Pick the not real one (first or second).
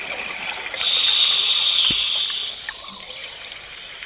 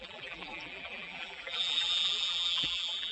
second